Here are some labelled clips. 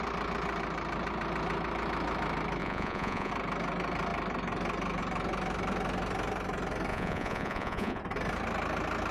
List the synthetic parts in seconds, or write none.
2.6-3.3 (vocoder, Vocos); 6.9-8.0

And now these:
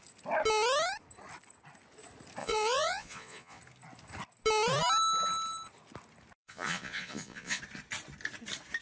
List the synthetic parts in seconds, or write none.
2.4-3.6 (vocoder, Vocos); 6.4-7.6

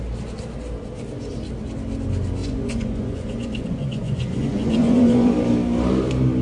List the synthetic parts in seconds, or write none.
2.4-5.3 (vocoder, Vocos)

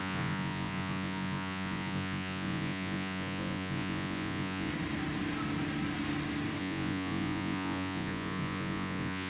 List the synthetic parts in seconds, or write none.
0.0-4.7 (vocoder, Vocos); 6.6-9.3

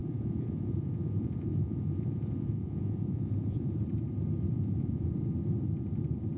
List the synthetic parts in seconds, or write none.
0.0-3.8 (vocoder, Vocos); 4.5-5.1

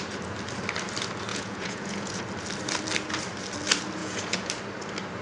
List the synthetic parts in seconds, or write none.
1.3-2.2 (vocoder, Vocos); 4.0-4.5

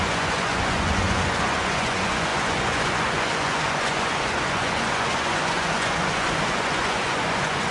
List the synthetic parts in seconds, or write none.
0.0-7.7 (vocoder, Vocos)